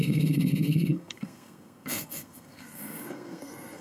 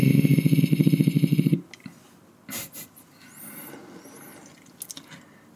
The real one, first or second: second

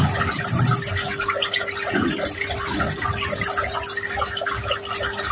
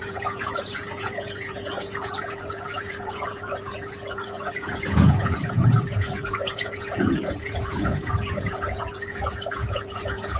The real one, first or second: first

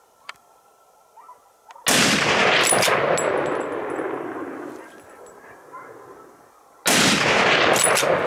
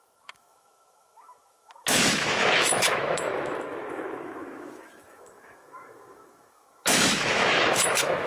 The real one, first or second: first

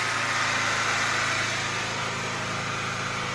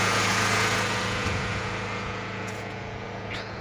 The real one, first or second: first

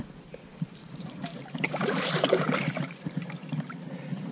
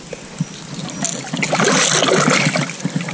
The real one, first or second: second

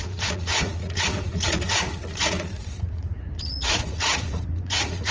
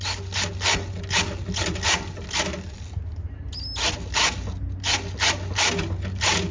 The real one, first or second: second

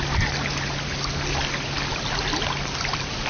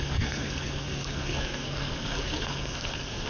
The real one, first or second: first